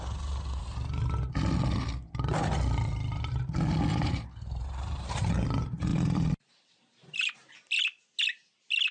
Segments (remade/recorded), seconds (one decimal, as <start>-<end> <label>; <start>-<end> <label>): 0.0-3.9 recorded; 3.9-5.3 remade; 5.3-5.9 recorded; 5.9-7.5 remade; 7.5-8.9 recorded